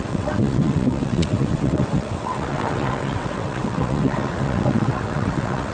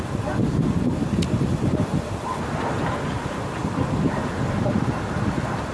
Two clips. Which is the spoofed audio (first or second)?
first